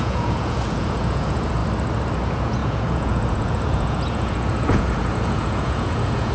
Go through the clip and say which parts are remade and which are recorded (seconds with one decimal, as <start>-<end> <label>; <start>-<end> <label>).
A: 0.0-1.6 remade; 1.6-2.2 recorded; 2.2-6.3 remade